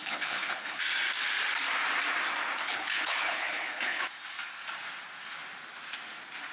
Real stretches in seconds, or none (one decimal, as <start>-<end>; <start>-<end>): 0.8-2.6; 4.0-6.5